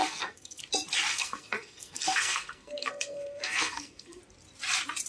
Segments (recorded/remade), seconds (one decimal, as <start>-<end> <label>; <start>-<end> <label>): 0.0-0.6 remade; 0.6-1.1 recorded; 1.1-4.2 remade; 4.2-5.1 recorded